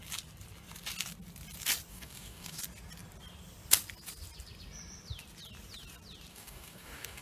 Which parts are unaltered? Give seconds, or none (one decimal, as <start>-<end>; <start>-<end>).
0.0-1.9; 2.6-6.3